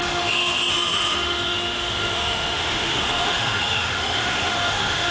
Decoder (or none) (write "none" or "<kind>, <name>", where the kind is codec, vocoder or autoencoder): autoencoder, DAC-VAE